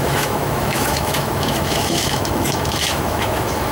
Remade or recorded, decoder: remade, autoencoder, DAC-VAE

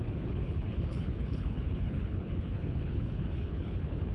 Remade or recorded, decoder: remade, codec, HILCodec